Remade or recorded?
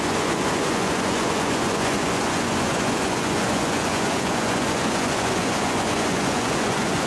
remade